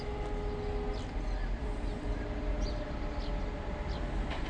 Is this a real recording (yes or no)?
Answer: yes